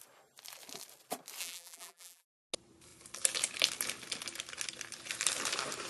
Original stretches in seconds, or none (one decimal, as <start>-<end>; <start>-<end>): 0.0-1.4; 2.3-5.9